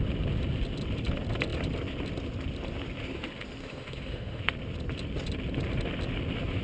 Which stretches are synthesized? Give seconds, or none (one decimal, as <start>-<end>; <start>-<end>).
3.6-4.4